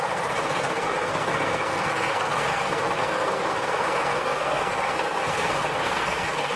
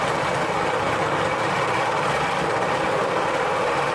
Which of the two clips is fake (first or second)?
first